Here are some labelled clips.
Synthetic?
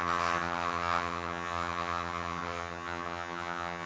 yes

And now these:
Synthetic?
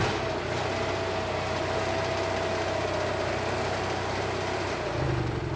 no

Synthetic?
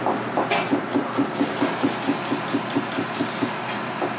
no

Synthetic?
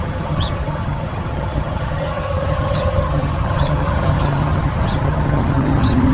yes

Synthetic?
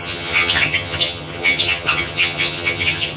yes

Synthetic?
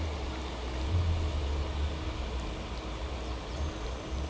no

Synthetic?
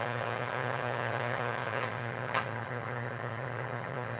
yes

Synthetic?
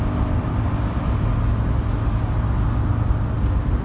no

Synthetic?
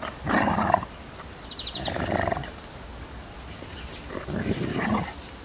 no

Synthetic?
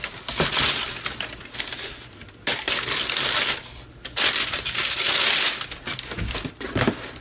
no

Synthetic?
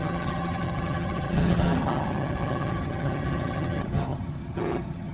yes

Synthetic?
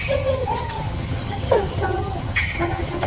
yes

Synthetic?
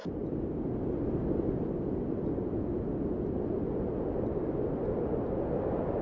no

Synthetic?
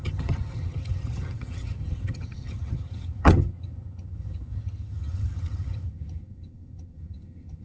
yes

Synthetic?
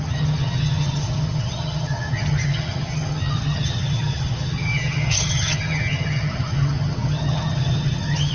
yes